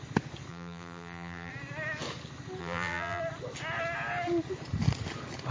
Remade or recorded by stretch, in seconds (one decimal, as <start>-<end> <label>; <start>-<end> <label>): 0.0-0.5 recorded; 0.5-1.5 remade; 1.5-2.6 recorded; 2.6-3.2 remade; 3.2-5.5 recorded